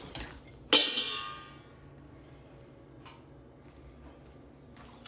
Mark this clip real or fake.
real